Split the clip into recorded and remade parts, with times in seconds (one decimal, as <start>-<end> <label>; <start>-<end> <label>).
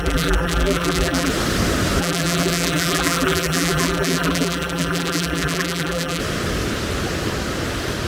0.0-1.3 remade; 1.3-2.0 recorded; 2.0-6.2 remade; 6.2-8.1 recorded